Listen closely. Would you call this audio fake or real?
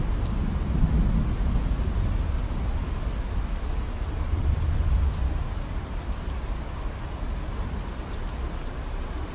real